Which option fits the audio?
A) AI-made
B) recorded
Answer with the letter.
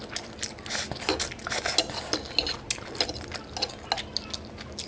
B